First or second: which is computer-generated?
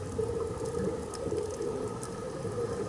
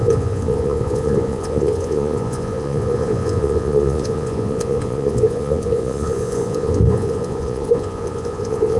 second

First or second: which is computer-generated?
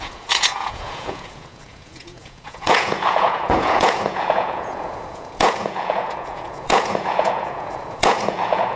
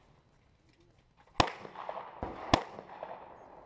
first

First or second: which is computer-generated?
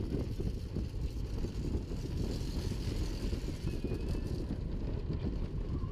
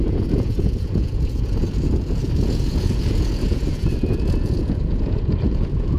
second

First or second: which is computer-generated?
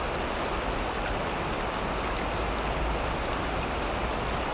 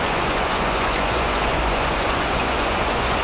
second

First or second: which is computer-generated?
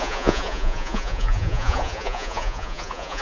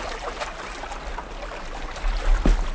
first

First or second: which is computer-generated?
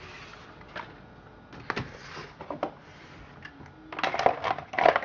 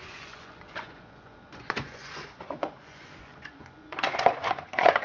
second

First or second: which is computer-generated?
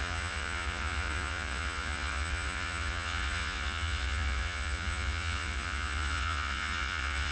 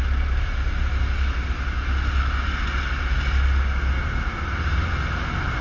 first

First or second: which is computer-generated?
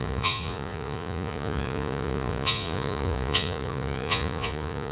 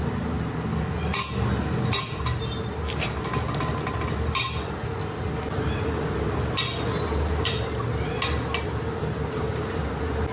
first